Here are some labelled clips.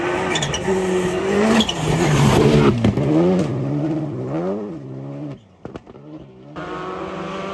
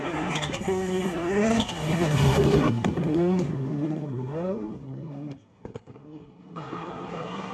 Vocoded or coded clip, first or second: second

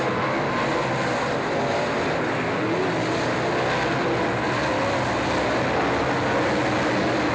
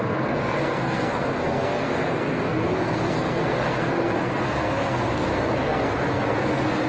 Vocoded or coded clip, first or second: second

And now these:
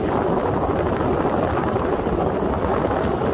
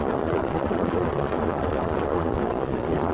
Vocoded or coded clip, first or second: second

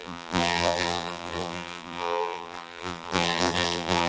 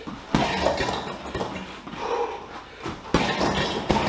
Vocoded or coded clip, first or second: first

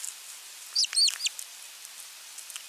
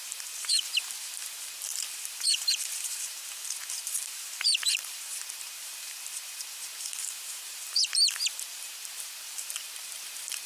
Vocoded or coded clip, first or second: second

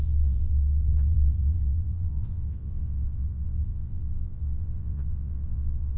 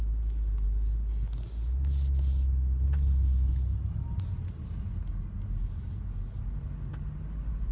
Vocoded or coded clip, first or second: first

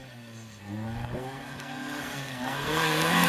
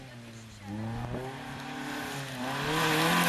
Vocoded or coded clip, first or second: first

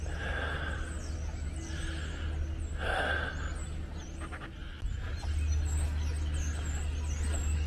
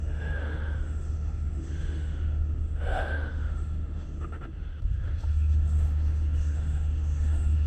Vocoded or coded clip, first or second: second